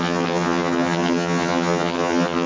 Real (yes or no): no